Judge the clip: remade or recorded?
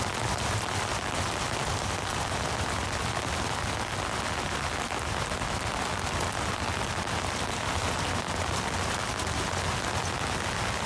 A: recorded